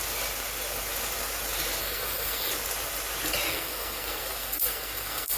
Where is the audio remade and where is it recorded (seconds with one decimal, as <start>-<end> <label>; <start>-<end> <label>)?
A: 0.0-1.8 recorded; 1.8-2.5 remade; 2.5-3.5 recorded; 3.5-5.4 remade